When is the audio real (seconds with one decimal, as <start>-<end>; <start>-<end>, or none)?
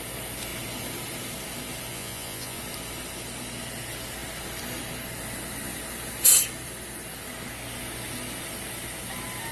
0.0-1.9; 2.6-9.5